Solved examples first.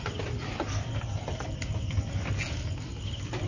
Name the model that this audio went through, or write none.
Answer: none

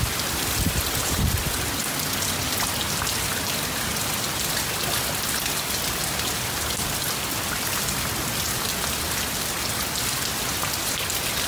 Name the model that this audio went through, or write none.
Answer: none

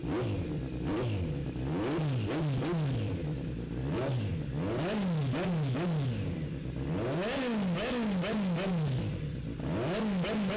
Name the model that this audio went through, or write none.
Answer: none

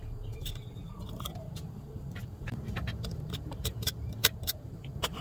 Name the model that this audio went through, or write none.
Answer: vocoder, BigVGAN v2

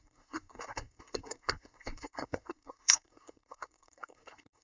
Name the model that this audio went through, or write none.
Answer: codec, SNAC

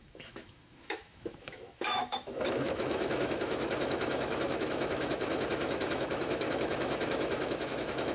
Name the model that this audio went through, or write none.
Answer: autoencoder, DAC-VAE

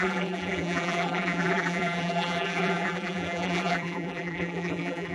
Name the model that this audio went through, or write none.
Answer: vocoder, BigVGAN v2